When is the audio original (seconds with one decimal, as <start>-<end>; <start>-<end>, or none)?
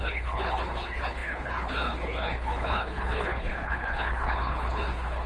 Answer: none